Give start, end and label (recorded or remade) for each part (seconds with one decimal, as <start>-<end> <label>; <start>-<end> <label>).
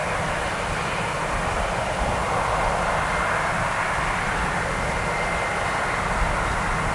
0.0-6.9 recorded